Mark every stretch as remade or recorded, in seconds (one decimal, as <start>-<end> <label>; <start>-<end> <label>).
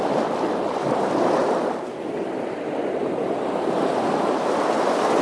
0.0-5.2 recorded